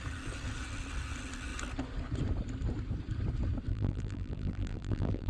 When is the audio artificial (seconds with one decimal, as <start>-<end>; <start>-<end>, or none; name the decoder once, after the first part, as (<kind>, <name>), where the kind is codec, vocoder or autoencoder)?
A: 3.7-5.3 (vocoder, BigVGAN v2)